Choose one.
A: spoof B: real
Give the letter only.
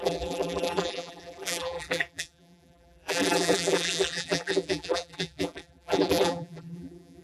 A